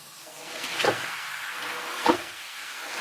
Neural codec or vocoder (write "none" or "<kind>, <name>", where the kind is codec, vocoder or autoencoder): codec, SNAC